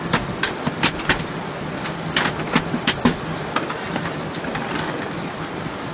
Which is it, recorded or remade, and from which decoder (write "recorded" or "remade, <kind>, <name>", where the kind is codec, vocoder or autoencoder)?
recorded